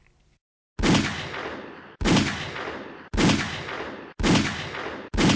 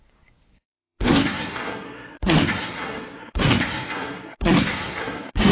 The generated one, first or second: second